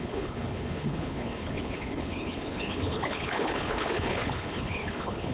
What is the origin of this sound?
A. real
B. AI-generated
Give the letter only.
B